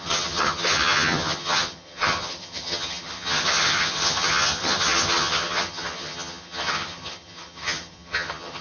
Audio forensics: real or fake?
fake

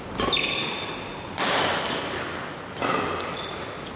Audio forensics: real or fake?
real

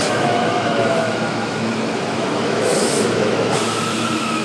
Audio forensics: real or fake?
fake